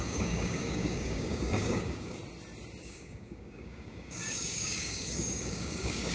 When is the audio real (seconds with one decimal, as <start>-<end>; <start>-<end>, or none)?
2.2-2.8